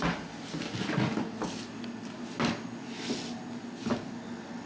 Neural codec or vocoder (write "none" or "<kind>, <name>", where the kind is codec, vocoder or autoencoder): none